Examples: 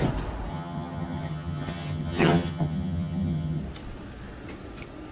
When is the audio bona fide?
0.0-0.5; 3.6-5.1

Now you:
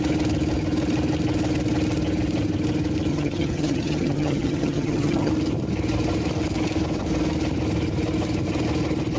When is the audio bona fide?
0.0-3.1; 5.3-9.2

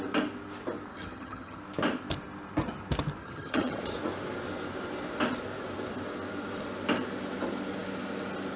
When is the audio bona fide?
0.0-0.9; 1.6-3.2; 3.8-8.6

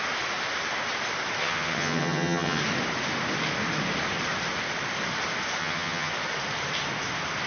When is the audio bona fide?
0.0-1.4; 2.6-5.6; 6.1-7.5

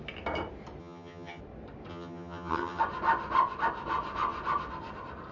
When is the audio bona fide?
0.0-0.8; 1.4-1.9; 2.8-5.3

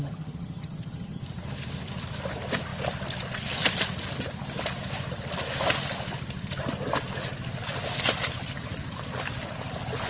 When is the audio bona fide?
1.2-10.1

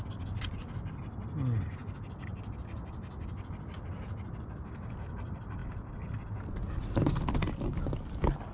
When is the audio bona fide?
0.0-8.5